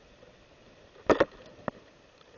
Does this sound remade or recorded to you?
recorded